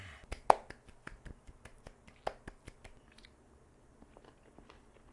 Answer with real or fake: real